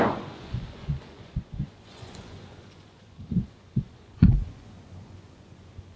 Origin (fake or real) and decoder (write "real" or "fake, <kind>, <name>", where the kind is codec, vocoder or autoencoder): fake, vocoder, Vocos